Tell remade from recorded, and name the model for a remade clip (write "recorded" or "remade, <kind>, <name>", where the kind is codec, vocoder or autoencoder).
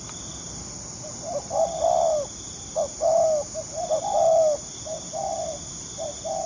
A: recorded